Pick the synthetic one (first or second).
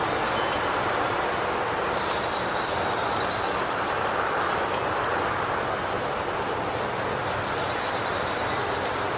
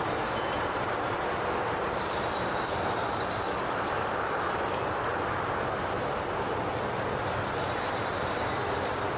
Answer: second